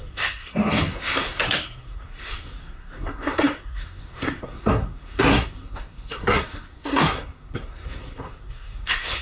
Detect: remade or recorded remade